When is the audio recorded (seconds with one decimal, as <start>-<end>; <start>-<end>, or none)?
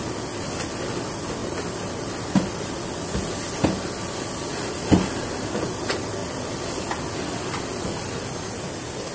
0.0-9.1